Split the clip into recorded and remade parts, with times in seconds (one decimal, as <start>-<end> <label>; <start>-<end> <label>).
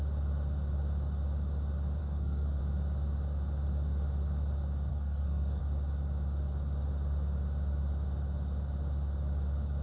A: 0.0-2.0 recorded; 2.0-2.6 remade; 2.6-4.9 recorded; 4.9-5.6 remade; 5.6-9.8 recorded